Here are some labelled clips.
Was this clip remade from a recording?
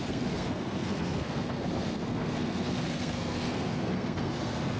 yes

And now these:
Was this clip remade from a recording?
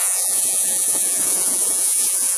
yes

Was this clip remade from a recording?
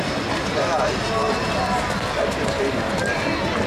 no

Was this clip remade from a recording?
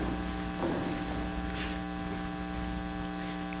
no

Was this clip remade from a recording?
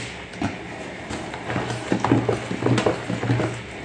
no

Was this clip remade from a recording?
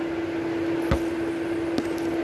no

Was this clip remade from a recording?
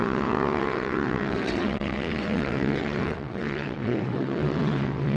yes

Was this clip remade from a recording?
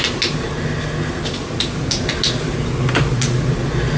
no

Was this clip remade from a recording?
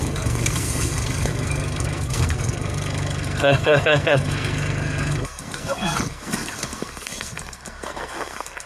yes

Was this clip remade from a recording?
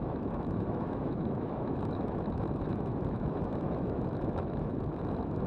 yes